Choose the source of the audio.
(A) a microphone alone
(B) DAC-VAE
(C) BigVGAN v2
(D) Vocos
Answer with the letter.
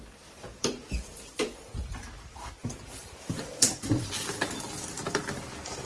C